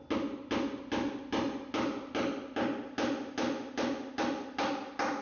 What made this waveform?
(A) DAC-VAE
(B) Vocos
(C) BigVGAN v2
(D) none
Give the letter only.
D